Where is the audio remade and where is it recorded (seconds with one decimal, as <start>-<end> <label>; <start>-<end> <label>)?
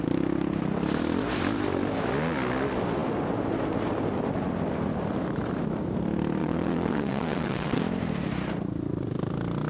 0.0-6.4 recorded; 6.4-7.8 remade; 7.8-9.7 recorded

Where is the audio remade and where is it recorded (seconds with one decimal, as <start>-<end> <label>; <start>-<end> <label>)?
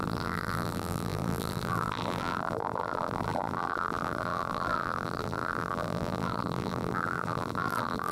0.0-8.1 remade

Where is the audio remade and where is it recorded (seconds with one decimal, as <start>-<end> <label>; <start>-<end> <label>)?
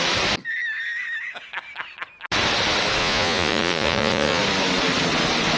0.0-3.0 recorded; 3.0-4.4 remade; 4.4-5.6 recorded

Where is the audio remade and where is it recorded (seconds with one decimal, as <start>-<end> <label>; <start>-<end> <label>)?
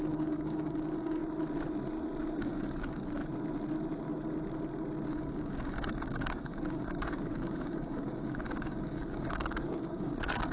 0.0-1.2 remade; 1.2-2.4 recorded; 2.4-3.2 remade; 3.2-5.1 recorded; 5.1-10.5 remade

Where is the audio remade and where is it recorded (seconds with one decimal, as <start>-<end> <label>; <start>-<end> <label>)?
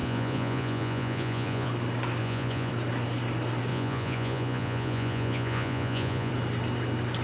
0.0-1.7 remade; 1.7-2.2 recorded; 2.2-2.7 remade; 2.7-3.7 recorded; 3.7-6.3 remade; 6.3-7.2 recorded